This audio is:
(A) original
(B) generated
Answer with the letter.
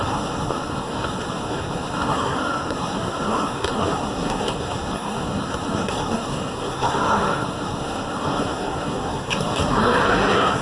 B